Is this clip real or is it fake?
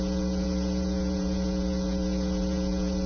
fake